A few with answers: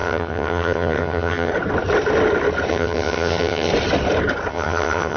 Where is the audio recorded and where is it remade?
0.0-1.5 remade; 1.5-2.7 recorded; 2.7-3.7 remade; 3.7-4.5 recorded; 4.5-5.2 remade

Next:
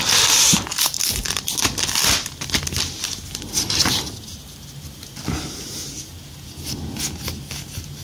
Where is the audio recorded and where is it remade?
0.0-0.7 recorded; 0.7-1.5 remade; 1.5-8.0 recorded

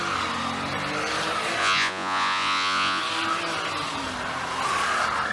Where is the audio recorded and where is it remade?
0.0-1.6 recorded; 1.6-3.0 remade; 3.0-5.3 recorded

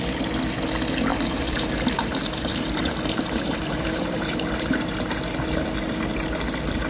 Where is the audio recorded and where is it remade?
0.0-1.1 recorded; 1.1-5.2 remade; 5.2-6.9 recorded

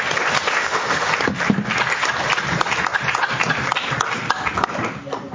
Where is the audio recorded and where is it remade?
0.0-0.6 recorded; 0.6-1.1 remade; 1.1-5.3 recorded

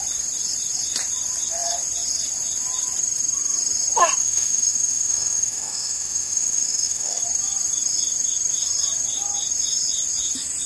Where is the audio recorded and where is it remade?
0.0-4.2 recorded; 4.2-7.2 remade; 7.2-10.7 recorded